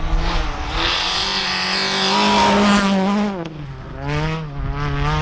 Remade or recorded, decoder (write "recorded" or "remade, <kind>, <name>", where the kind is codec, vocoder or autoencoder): recorded